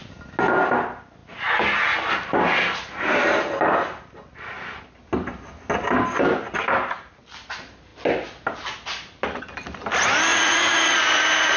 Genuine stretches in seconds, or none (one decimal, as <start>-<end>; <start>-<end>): 0.0-10.3; 11.2-11.6